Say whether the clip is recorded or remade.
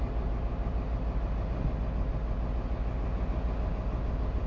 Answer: recorded